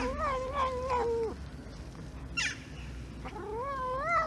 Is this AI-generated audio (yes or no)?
no